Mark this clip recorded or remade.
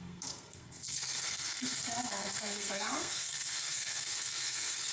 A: remade